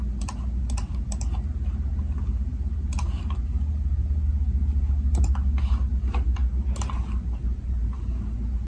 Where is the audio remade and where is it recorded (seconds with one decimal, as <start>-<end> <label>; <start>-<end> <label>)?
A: 0.0-0.4 recorded; 0.4-1.2 remade; 1.2-6.4 recorded; 6.4-8.7 remade